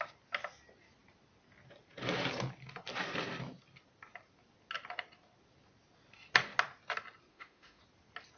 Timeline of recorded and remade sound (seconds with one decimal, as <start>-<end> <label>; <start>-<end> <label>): 0.0-7.3 recorded; 7.3-7.8 remade; 7.8-8.4 recorded